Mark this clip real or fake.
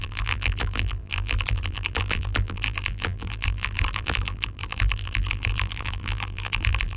fake